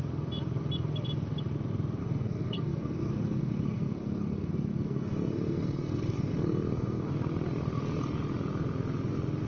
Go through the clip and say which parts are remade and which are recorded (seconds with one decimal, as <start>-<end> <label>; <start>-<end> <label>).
0.0-2.0 recorded; 2.0-7.1 remade; 7.1-9.5 recorded

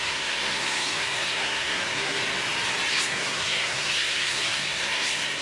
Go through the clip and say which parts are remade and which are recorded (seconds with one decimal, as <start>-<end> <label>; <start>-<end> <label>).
0.0-2.2 remade; 2.2-2.9 recorded; 2.9-5.4 remade

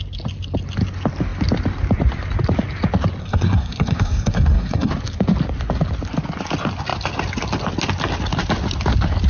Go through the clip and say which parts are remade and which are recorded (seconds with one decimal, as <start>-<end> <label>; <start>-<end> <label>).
0.0-3.2 recorded; 3.2-4.9 remade; 4.9-9.3 recorded